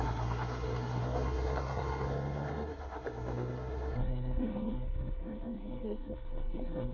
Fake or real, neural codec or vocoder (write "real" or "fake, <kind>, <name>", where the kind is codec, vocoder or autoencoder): fake, codec, SNAC